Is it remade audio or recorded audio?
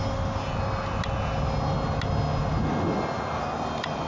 recorded